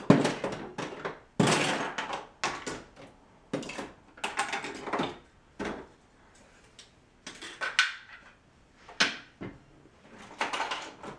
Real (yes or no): yes